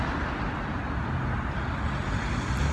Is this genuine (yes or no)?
yes